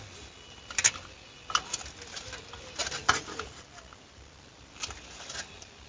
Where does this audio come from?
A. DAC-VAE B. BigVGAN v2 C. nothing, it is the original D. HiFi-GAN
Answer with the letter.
C